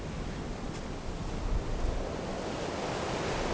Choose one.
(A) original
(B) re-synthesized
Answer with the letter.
A